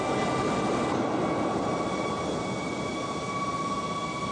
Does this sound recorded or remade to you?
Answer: recorded